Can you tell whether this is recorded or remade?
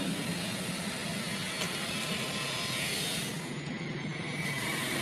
recorded